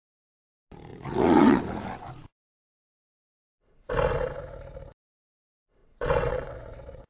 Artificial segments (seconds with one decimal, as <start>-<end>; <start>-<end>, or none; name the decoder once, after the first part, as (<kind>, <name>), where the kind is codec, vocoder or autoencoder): 0.9-1.6 (vocoder, WaveNeXt); 5.8-7.1